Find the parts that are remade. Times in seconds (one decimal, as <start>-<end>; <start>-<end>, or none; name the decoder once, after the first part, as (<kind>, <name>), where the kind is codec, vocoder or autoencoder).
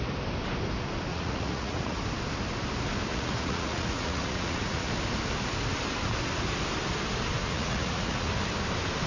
1.1-2.0 (vocoder, Vocos); 3.1-4.9; 7.4-8.3